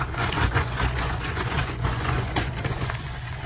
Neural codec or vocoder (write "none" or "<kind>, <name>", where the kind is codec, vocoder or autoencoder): vocoder, Vocos